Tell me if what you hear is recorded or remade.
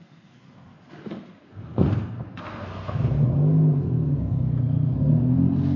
remade